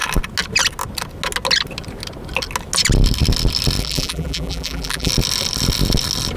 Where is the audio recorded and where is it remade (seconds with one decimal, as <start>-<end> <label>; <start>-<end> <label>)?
0.0-3.8 recorded; 3.8-5.1 remade; 5.1-6.4 recorded